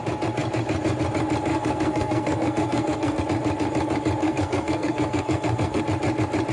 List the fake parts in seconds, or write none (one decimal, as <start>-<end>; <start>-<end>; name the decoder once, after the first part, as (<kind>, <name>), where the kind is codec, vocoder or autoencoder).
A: 1.5-3.2 (codec, SNAC); 4.2-5.8